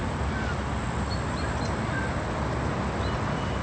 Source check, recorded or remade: recorded